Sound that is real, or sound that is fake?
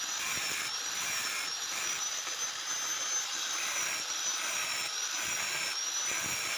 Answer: real